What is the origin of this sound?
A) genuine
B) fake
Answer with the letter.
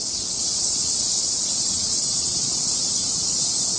B